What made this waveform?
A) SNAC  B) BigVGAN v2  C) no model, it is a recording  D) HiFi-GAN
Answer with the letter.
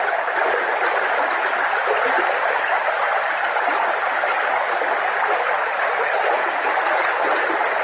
C